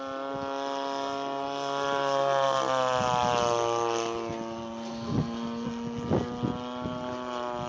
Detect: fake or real real